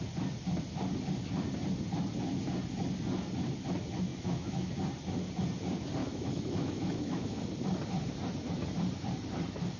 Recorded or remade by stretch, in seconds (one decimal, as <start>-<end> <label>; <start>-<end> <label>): 0.0-4.1 recorded; 4.1-4.7 remade; 4.7-6.0 recorded; 6.0-7.4 remade; 7.4-9.8 recorded